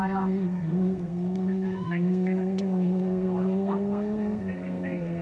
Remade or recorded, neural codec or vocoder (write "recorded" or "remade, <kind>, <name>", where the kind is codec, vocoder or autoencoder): remade, codec, SNAC